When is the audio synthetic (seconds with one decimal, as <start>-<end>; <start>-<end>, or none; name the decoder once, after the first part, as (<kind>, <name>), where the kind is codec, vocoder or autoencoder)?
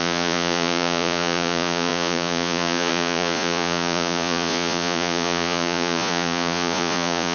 0.0-7.3 (vocoder, Vocos)